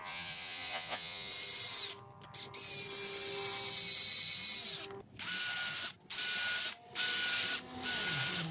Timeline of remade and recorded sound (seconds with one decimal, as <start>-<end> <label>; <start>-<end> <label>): 0.0-1.3 remade; 1.3-8.5 recorded